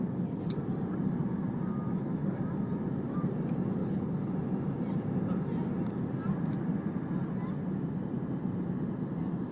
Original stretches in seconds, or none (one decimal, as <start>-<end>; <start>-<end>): 0.0-3.8; 4.3-9.5